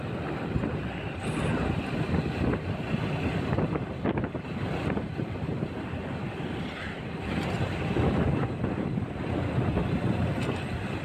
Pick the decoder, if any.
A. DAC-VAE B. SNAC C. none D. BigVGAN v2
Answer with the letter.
D